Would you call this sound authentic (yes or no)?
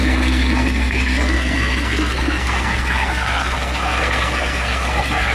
no